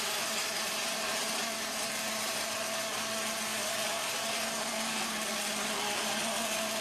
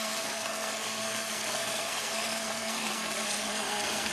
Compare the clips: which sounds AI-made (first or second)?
second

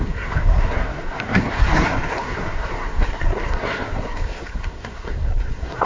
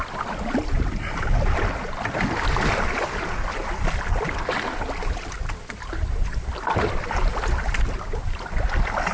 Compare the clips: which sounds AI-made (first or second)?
first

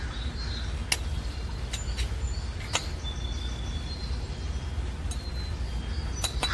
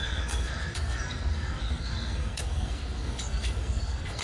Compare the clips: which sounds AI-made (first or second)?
second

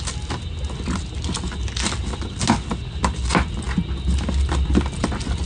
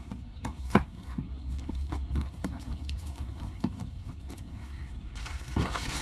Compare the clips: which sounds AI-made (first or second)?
second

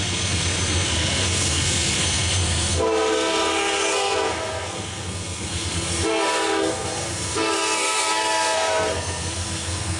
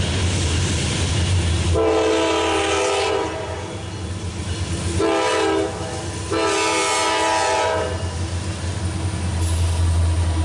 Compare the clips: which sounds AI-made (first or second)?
first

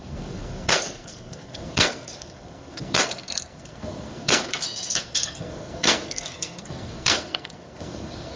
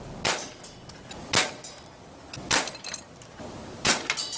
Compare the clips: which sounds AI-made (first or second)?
first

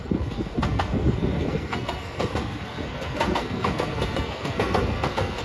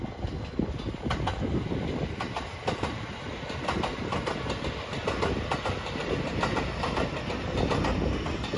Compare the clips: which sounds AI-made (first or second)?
first